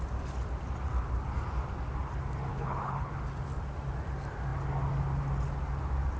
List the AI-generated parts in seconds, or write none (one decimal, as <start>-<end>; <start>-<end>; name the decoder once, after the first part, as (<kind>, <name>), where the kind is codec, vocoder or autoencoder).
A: 2.5-3.1 (codec, HILCodec)